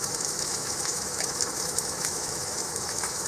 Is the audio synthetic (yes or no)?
yes